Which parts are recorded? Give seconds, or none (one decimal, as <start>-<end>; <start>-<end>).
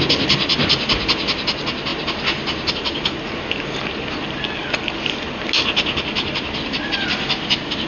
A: 0.0-7.9